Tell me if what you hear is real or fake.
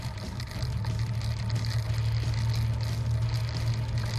real